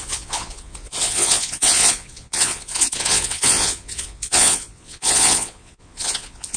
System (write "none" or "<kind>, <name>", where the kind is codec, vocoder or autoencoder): vocoder, Vocos